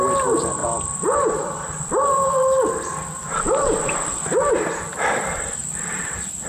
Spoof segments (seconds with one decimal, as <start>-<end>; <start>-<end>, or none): 0.6-4.5; 5.6-6.1